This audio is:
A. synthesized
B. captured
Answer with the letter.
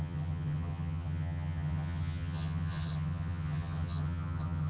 A